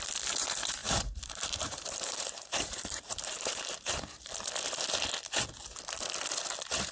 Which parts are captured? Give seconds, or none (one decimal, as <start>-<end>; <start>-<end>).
0.0-0.8; 4.3-6.9